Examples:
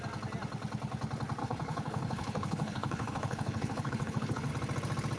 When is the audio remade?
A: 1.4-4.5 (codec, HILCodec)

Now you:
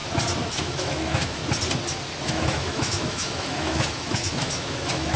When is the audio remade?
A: 0.5-1.4 (autoencoder, DAC-VAE); 2.2-5.2

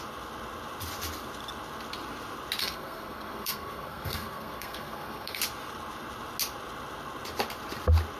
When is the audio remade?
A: 2.6-5.4 (codec, SNAC)

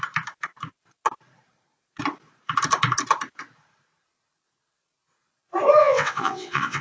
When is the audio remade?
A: 5.8-6.8 (vocoder, WaveNeXt)

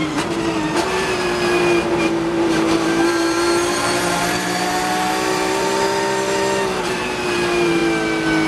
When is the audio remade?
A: 0.0-7.8 (vocoder, BigVGAN v2)